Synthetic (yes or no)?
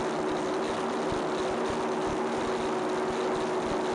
no